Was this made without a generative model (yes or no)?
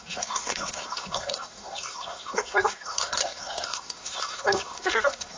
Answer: no